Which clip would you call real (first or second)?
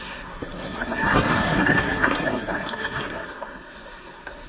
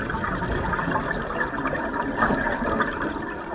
second